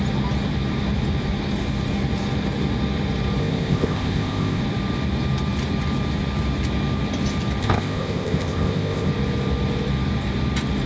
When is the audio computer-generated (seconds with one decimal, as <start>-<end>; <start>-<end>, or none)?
3.4-4.6; 7.6-9.1